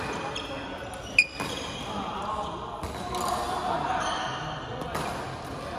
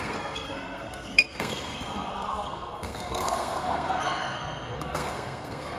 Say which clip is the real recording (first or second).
first